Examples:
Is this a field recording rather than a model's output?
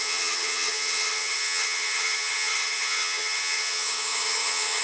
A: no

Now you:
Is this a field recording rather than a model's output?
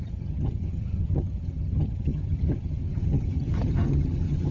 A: no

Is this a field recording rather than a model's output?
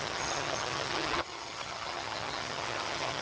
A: no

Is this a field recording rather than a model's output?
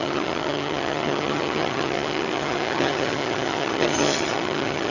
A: no